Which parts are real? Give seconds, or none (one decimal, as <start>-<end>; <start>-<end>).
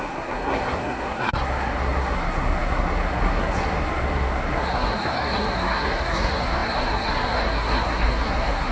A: none